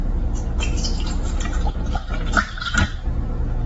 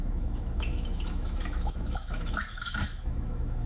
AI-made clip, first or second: second